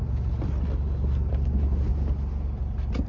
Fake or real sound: real